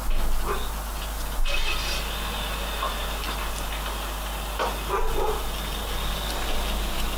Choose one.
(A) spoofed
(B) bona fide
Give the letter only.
B